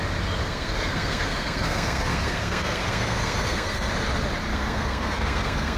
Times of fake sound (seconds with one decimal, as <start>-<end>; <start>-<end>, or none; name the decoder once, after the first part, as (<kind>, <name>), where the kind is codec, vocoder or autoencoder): 0.4-3.9 (codec, SNAC); 4.5-5.8

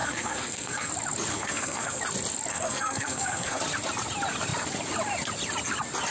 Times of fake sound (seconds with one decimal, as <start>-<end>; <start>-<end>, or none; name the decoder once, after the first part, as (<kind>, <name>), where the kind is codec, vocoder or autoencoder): 0.0-0.9 (codec, SNAC); 1.3-2.0; 2.5-3.6

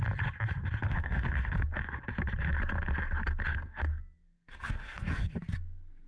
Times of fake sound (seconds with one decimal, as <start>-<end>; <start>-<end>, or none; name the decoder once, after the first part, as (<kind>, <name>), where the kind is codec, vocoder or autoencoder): 0.8-1.5 (codec, SNAC); 3.5-5.4

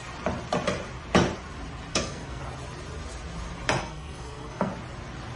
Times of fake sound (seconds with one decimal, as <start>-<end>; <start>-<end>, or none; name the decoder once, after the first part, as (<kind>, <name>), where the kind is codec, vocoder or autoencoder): 1.9-2.4 (codec, SNAC); 3.8-4.7